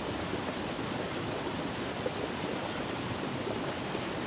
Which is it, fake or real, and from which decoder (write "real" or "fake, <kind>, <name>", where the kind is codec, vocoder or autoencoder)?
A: real